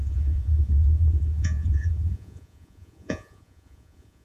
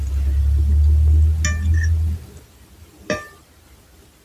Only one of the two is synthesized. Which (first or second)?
first